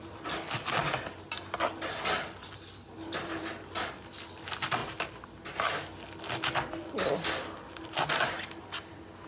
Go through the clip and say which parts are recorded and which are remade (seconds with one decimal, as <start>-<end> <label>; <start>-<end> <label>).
0.0-9.3 recorded